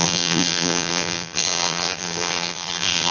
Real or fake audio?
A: fake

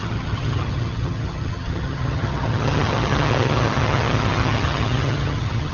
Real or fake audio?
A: fake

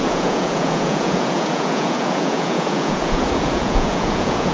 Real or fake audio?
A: fake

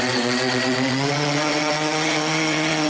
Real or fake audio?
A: fake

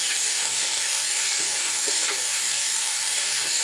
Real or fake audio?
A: fake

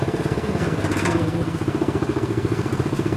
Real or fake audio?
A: fake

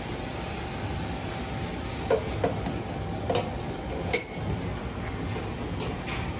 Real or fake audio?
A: real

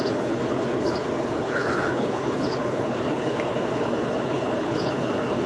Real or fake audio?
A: fake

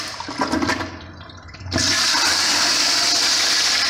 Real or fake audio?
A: fake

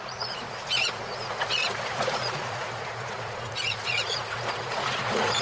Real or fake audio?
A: fake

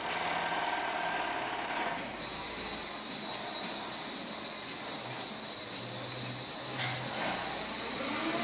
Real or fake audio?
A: real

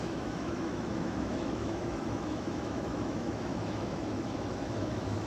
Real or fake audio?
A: fake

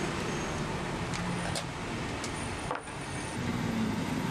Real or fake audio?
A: real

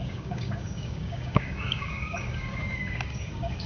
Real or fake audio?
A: fake